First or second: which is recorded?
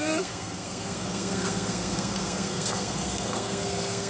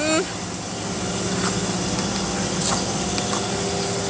second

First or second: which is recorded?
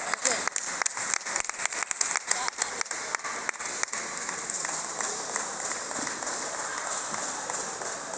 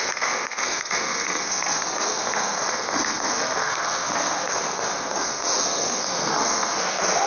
first